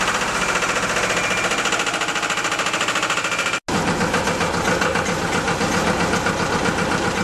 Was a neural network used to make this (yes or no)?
no